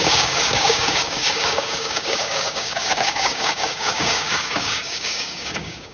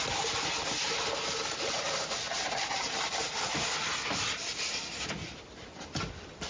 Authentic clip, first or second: second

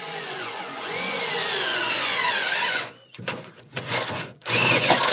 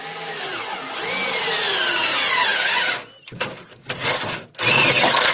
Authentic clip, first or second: second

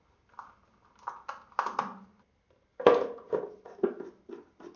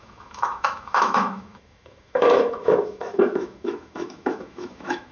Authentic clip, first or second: first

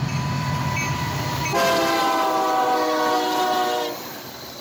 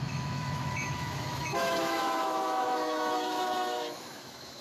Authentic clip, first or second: first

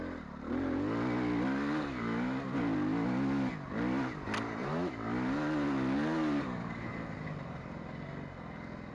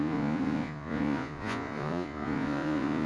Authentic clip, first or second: first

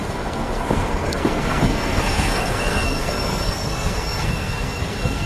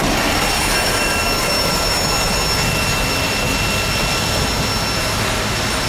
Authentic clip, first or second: second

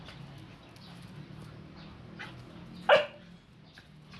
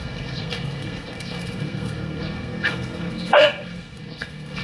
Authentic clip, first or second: first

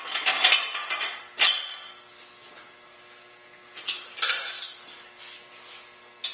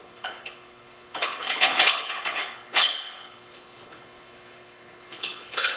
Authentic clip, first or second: first